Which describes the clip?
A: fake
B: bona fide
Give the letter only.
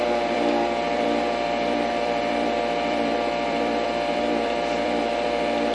A